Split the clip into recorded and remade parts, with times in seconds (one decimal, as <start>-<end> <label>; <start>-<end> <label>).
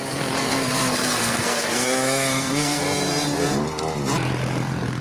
0.0-0.4 recorded; 0.4-2.8 remade; 2.8-5.0 recorded